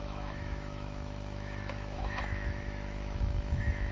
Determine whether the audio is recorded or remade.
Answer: remade